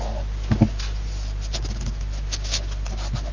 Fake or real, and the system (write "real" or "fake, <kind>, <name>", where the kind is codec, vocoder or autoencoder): real